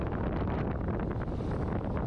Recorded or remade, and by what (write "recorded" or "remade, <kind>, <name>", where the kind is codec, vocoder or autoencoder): recorded